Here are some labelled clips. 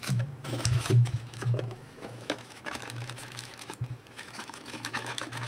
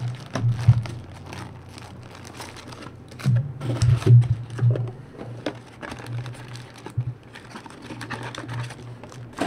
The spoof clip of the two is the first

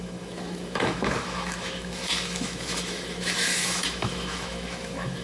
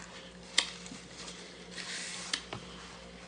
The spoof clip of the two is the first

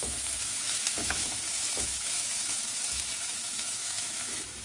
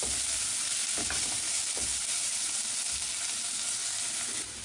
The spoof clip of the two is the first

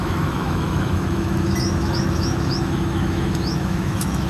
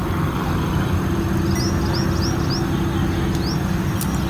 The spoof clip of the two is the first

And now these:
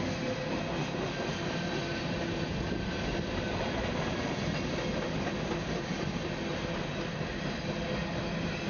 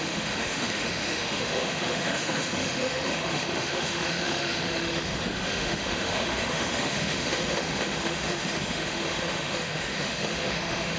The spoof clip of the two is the second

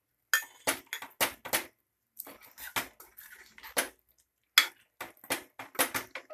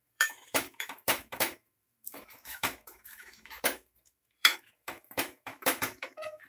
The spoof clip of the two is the second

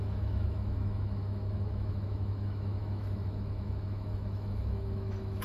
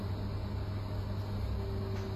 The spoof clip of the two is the first